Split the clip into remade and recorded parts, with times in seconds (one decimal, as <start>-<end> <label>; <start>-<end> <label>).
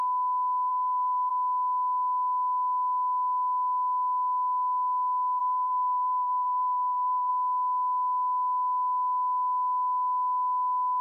0.0-0.7 recorded; 0.7-1.3 remade; 1.3-5.4 recorded; 5.4-7.3 remade; 7.3-11.0 recorded